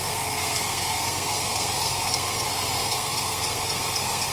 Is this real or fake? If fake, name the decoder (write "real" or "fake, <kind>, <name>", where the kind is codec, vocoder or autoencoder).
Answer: fake, codec, SNAC